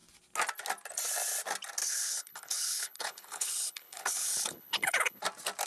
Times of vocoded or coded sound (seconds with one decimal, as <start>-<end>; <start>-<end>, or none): 1.8-5.2